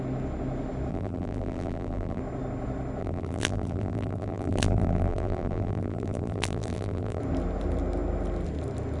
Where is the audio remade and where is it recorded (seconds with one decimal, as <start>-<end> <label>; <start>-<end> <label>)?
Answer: 0.0-0.9 recorded; 0.9-2.2 remade; 2.2-3.0 recorded; 3.0-7.2 remade; 7.2-9.0 recorded